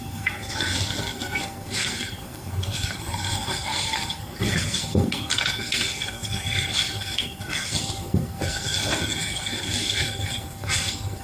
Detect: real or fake fake